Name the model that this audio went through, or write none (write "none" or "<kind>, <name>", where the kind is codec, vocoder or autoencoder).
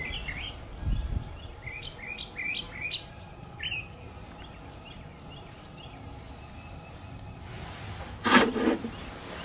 none